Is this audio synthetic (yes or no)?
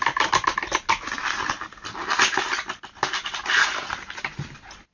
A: no